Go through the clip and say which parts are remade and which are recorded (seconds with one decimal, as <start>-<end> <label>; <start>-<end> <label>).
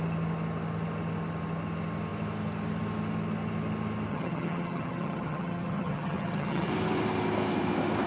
0.0-4.1 recorded; 4.1-6.7 remade; 6.7-8.1 recorded